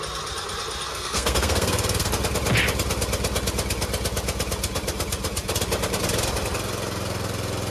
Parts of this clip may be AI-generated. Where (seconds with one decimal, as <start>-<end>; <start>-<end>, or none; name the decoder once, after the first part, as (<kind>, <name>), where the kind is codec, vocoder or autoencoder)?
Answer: 0.9-2.1 (codec, SNAC)